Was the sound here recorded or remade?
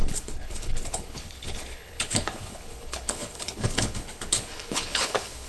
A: remade